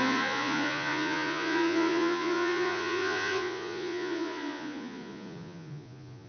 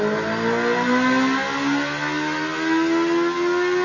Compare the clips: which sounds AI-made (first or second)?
first